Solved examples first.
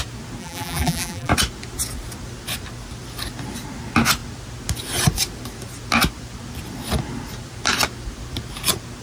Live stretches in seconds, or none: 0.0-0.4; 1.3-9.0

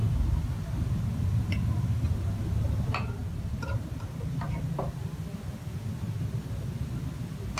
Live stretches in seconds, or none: 0.0-3.2; 4.8-7.6